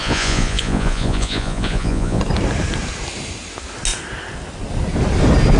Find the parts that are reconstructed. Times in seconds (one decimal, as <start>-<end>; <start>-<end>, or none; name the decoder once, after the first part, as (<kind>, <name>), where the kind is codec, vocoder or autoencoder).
0.0-2.2 (vocoder, Vocos)

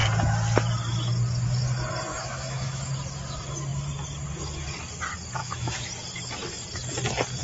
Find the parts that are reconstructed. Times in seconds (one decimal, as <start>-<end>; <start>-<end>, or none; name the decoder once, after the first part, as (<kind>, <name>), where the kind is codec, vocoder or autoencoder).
2.1-2.9 (autoencoder, DAC-VAE); 5.4-5.9